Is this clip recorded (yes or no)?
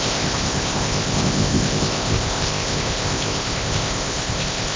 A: no